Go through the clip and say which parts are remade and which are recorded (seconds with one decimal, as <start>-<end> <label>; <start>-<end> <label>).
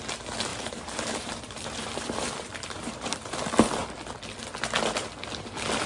0.0-0.5 recorded; 0.5-3.4 remade; 3.4-5.9 recorded